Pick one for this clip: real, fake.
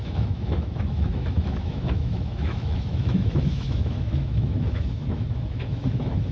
fake